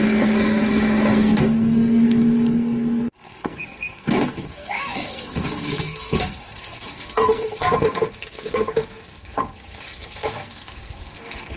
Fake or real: fake